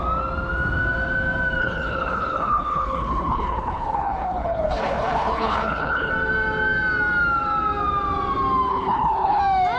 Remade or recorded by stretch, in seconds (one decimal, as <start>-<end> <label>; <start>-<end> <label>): 0.0-1.6 recorded; 1.6-6.1 remade; 6.1-8.7 recorded; 8.7-9.4 remade; 9.4-9.8 recorded